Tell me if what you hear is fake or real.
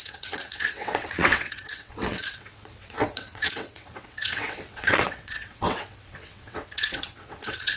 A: fake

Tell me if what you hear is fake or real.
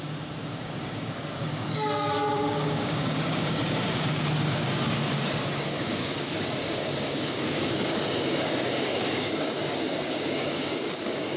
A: fake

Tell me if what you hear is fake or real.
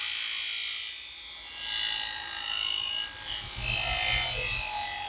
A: real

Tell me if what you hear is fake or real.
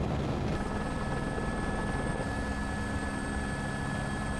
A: real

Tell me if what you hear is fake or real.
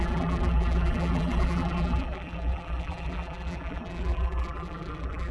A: fake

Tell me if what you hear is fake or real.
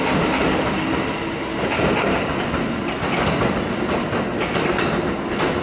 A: real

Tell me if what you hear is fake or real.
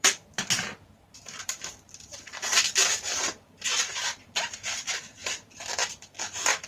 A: fake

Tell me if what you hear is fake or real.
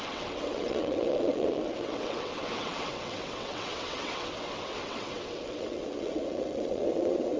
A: fake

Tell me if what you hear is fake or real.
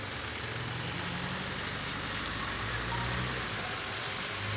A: real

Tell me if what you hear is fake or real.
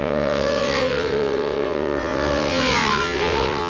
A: fake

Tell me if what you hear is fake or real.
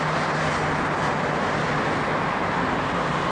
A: real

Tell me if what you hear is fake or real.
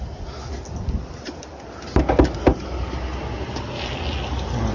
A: real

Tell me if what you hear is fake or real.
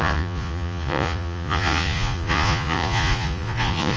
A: fake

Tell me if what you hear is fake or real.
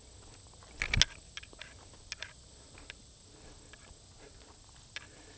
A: real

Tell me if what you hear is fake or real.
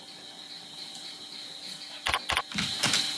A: real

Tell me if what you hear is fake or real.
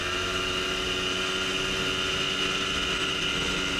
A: real